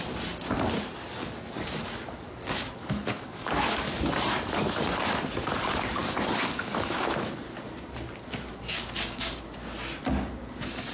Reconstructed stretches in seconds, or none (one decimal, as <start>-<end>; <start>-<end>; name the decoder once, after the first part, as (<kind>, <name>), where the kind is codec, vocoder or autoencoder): 1.2-4.1 (codec, DAC); 6.0-6.9; 8.5-9.4